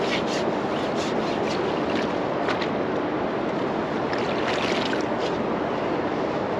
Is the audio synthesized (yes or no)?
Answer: no